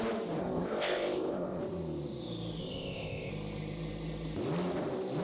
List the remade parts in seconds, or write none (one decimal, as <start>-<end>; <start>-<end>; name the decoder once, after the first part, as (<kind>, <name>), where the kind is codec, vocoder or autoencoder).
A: 0.4-1.6 (codec, ZipCodec); 2.6-3.3